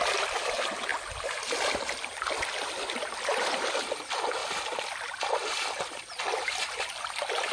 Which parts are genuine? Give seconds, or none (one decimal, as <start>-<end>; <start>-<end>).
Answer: 0.0-7.5